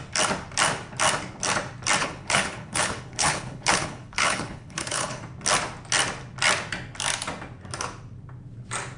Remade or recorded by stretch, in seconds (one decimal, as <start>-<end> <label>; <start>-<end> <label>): 0.0-2.0 recorded; 2.0-5.2 remade; 5.2-9.0 recorded